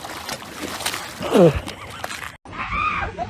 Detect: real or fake real